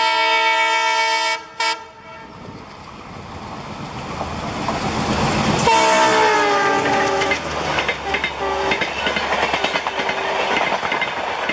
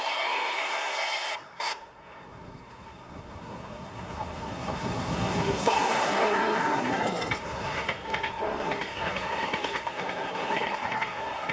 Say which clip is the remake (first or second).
second